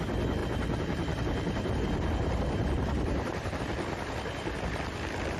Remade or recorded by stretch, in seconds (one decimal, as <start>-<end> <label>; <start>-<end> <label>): 0.0-0.4 recorded; 0.4-3.6 remade; 3.6-5.4 recorded

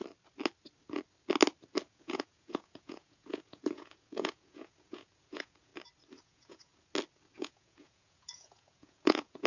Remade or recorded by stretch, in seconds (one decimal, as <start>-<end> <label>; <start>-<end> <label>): 0.0-1.9 recorded; 1.9-5.7 remade; 5.7-6.2 recorded; 6.2-6.7 remade; 6.7-7.3 recorded; 7.3-9.5 remade

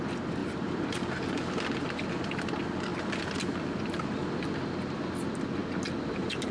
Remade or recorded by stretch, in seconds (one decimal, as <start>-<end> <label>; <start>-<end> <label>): 0.0-0.4 recorded; 0.4-1.3 remade; 1.3-6.5 recorded

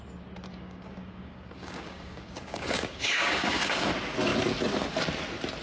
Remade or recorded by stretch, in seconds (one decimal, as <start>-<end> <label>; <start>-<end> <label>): 0.0-0.5 recorded; 0.5-3.9 remade; 3.9-5.6 recorded

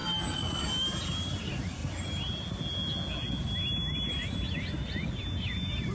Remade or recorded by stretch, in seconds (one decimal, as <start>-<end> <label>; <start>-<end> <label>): 0.0-5.9 recorded

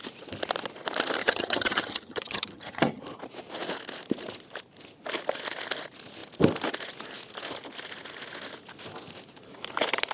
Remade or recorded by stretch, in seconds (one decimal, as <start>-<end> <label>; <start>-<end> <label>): 0.0-1.2 recorded; 1.2-3.0 remade; 3.0-10.1 recorded

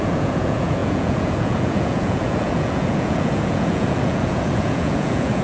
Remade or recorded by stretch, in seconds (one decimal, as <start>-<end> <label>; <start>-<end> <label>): 0.0-5.4 remade